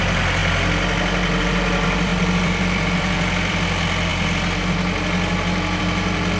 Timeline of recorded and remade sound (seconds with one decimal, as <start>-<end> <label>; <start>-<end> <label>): 0.0-0.4 remade; 0.4-1.4 recorded; 1.4-4.1 remade; 4.1-5.8 recorded; 5.8-6.4 remade